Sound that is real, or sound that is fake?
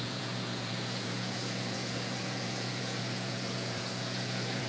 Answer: fake